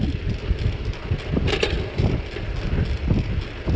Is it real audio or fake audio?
real